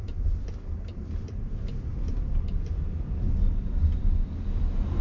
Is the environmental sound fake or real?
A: real